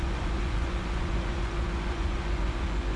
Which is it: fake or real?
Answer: fake